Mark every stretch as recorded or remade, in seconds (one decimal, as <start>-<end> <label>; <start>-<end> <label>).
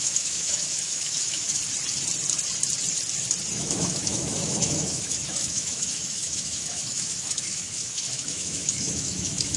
0.0-1.6 remade; 1.6-3.5 recorded; 3.5-9.6 remade